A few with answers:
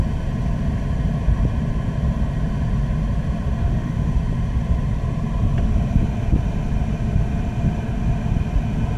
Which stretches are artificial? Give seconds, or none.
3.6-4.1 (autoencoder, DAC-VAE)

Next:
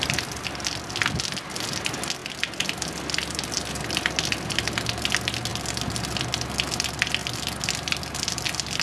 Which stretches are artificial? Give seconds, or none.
none